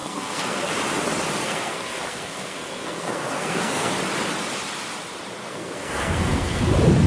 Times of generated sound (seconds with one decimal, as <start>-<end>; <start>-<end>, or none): 0.0-0.7; 1.4-3.9; 5.4-6.6